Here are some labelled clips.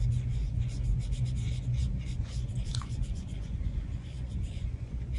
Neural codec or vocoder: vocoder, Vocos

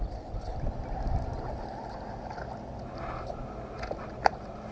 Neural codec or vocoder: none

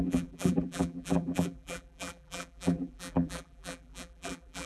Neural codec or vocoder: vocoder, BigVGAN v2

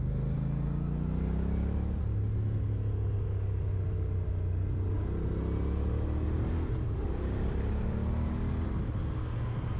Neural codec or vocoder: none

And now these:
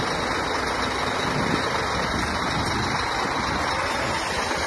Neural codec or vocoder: none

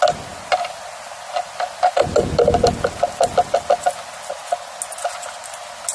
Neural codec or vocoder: none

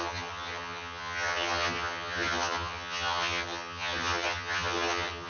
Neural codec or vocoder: vocoder, HiFi-GAN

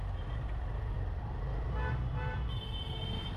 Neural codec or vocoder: none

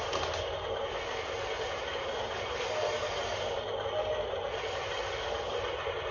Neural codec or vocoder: none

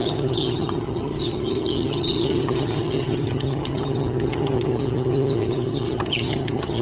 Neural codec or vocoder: vocoder, HiFi-GAN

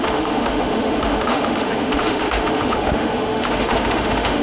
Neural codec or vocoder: autoencoder, DAC-VAE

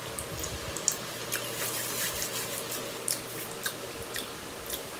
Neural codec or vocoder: none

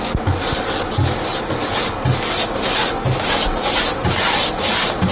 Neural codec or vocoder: none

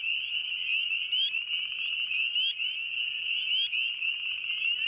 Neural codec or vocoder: none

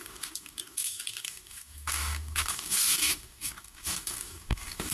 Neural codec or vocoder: codec, DAC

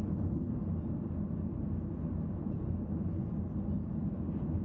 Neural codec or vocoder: none